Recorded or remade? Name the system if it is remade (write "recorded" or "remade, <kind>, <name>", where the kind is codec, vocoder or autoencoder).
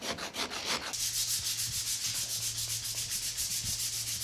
recorded